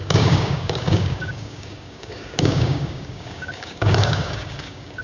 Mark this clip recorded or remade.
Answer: remade